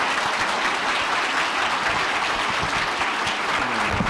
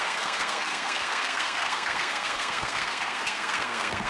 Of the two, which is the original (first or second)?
first